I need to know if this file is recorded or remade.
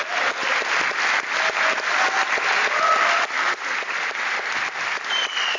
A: recorded